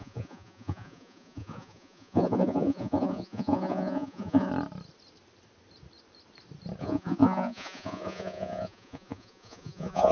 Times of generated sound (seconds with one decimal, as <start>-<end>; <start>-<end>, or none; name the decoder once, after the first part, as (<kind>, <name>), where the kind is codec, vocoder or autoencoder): 0.0-4.5 (vocoder, Vocos); 6.8-10.1